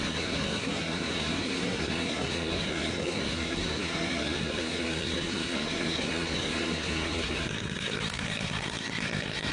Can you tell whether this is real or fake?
fake